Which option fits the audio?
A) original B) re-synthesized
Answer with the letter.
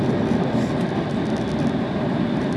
A